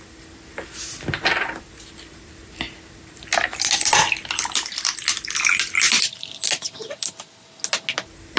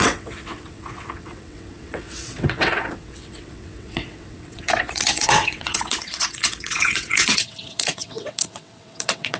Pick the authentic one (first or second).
first